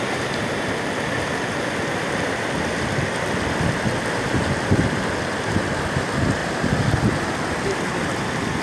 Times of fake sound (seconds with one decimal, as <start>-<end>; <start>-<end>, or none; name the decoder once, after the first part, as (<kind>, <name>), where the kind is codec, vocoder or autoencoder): none